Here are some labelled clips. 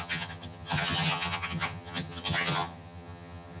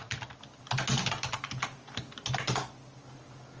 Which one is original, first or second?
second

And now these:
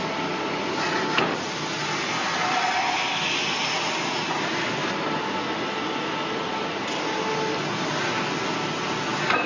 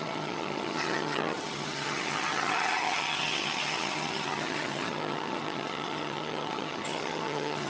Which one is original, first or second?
first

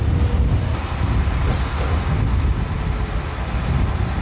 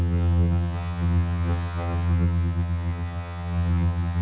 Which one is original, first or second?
first